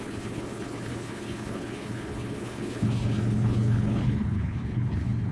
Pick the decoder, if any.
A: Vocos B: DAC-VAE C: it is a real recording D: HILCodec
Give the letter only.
D